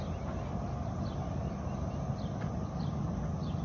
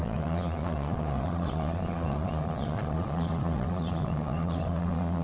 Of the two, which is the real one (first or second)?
first